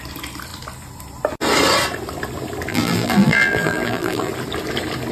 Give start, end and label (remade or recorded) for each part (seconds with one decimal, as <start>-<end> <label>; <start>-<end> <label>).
0.0-2.7 recorded; 2.7-4.3 remade; 4.3-5.1 recorded